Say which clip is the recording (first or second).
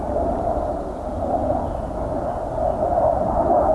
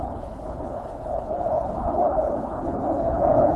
first